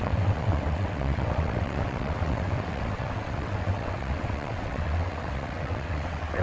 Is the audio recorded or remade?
remade